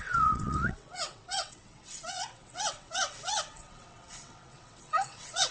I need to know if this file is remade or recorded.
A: remade